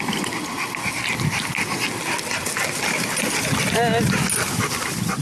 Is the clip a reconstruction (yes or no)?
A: no